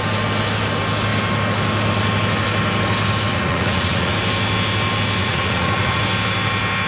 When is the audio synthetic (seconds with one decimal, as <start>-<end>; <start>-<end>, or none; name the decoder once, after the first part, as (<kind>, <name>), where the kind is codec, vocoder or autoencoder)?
3.3-4.1 (vocoder, Vocos); 5.2-6.0